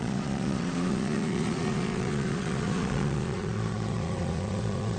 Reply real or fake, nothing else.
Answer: fake